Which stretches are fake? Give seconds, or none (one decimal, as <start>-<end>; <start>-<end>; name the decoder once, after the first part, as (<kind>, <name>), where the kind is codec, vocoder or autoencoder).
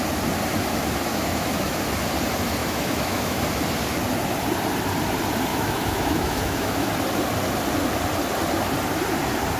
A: 1.1-1.8 (autoencoder, DAC-VAE); 2.6-3.4; 5.5-6.9